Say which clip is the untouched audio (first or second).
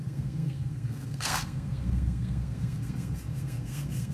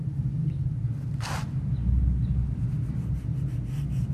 second